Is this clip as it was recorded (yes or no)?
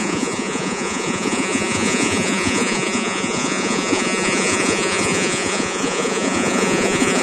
no